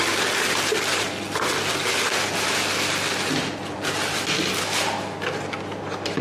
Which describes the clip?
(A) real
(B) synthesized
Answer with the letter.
A